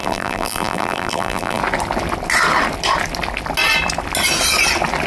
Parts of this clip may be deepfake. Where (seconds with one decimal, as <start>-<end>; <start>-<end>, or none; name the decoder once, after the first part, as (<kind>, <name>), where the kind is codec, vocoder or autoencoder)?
0.0-1.6 (vocoder, BigVGAN v2)